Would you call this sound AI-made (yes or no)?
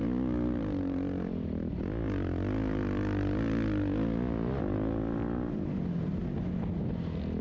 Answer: no